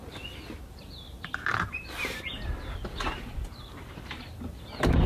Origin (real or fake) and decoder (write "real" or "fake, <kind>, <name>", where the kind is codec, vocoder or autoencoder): real